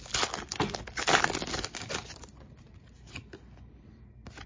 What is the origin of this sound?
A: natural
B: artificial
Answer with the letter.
A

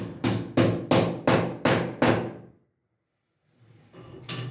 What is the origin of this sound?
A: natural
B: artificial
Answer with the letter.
A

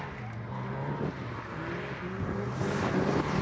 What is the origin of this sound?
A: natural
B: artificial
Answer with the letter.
A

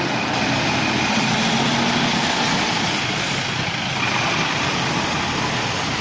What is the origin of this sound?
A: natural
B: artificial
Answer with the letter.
A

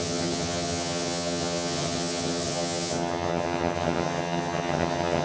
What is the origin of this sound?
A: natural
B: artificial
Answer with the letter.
B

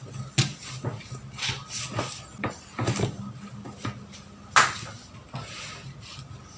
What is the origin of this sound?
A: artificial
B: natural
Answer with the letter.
B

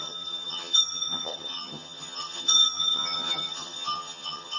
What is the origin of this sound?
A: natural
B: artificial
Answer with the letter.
B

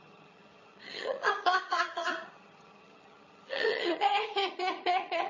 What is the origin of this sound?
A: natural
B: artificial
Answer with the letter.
B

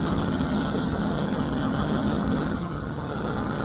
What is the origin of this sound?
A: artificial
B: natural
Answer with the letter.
A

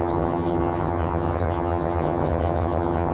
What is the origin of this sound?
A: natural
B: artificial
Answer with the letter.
B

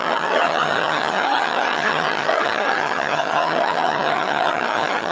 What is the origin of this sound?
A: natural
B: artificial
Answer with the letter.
B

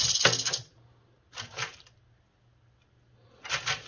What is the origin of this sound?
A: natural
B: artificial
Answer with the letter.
A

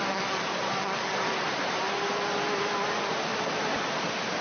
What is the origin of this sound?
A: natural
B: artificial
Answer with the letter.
A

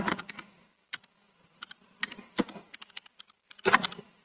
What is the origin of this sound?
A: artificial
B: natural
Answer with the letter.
B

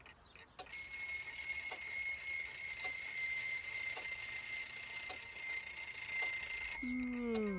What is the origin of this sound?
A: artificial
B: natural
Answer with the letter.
B